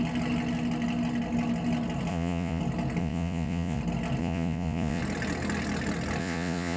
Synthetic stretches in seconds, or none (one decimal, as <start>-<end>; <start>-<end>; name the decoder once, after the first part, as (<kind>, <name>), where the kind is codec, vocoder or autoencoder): 2.1-2.6 (vocoder, Vocos); 3.0-3.8; 4.2-5.0; 6.2-6.8